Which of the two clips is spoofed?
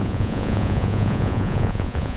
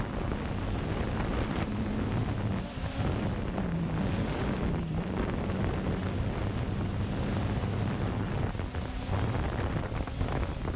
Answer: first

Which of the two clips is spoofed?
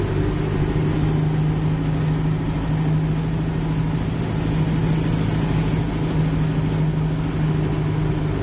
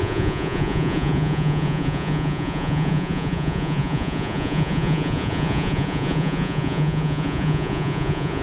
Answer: second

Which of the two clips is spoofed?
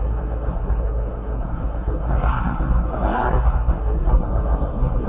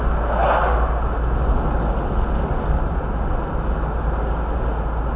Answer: first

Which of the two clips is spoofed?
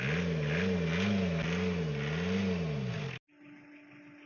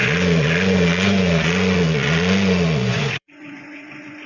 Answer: second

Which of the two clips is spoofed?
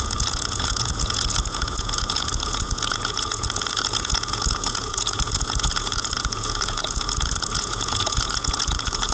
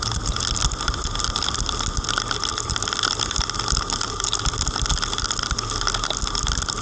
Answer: first